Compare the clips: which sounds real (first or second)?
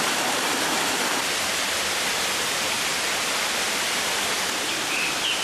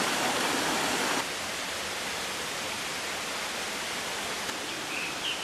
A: second